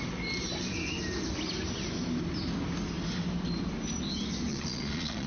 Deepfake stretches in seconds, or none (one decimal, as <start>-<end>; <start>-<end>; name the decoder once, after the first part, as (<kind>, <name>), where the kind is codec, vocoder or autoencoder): 4.5-5.3 (vocoder, Vocos)